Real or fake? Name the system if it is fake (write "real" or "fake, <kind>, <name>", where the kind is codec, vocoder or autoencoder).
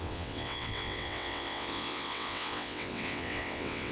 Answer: fake, vocoder, WaveNeXt